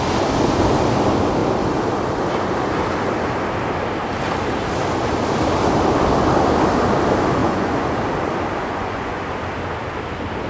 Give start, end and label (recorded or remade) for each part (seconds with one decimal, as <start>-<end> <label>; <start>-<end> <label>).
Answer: 0.0-7.4 recorded; 7.4-8.0 remade; 8.0-8.6 recorded; 8.6-9.2 remade; 9.2-10.5 recorded